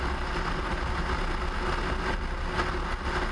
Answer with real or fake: real